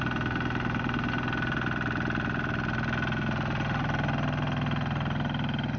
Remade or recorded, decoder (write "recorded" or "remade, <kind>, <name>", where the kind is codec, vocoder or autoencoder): recorded